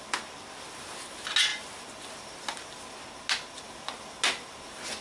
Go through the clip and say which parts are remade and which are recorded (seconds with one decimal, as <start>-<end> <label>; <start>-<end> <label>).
0.0-5.0 recorded